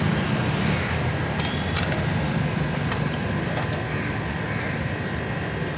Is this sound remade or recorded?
recorded